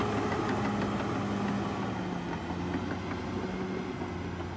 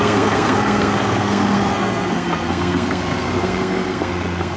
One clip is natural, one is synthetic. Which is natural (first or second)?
first